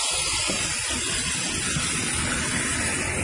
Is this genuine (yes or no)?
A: yes